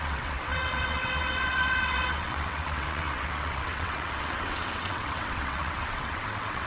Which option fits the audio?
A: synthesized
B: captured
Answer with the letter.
A